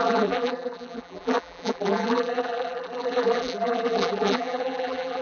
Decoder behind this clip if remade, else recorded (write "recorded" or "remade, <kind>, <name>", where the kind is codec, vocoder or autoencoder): remade, vocoder, BigVGAN v2